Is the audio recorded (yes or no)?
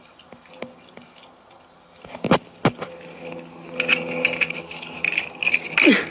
yes